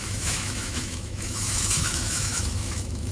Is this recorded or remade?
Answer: remade